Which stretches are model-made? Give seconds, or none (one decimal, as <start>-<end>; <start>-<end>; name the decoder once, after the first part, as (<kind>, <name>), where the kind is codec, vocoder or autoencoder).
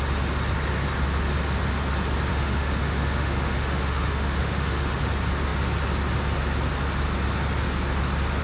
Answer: 2.3-5.0 (autoencoder, DAC-VAE)